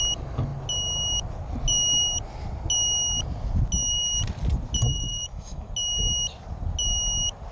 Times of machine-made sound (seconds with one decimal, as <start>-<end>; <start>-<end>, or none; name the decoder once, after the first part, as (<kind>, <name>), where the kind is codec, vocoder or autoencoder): 4.9-5.7 (autoencoder, DAC-VAE)

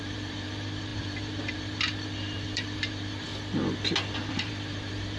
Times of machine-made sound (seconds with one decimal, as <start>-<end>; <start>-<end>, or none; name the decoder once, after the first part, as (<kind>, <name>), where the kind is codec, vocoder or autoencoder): 0.0-3.3 (vocoder, BigVGAN v2); 4.3-5.2

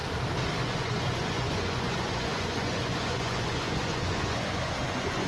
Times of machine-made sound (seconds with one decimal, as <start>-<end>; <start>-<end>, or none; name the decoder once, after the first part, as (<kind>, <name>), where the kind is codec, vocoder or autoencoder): 0.6-5.3 (vocoder, Vocos)

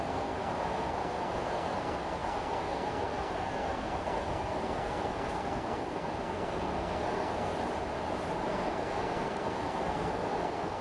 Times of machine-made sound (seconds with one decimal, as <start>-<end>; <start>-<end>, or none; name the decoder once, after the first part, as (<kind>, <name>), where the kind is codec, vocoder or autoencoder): 0.0-7.5 (codec, SNAC); 8.5-10.8

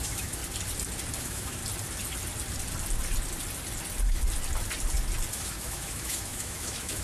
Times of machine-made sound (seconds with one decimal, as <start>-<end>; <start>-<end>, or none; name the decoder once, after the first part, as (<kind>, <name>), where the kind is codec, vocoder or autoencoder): 0.0-0.4 (autoencoder, DAC-VAE); 1.2-1.6; 5.3-7.0